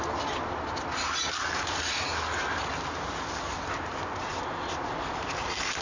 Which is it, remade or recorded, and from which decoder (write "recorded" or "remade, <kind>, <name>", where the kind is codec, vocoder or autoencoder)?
recorded